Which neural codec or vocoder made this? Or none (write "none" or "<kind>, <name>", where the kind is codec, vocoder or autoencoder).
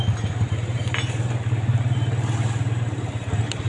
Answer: none